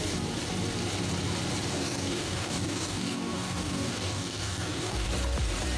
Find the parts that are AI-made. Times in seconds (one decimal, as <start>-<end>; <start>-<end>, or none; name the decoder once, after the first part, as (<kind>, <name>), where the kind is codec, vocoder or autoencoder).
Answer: 1.7-5.1 (codec, DAC)